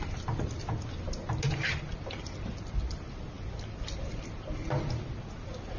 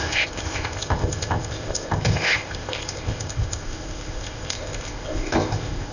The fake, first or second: second